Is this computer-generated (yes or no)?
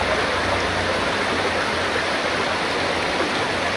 no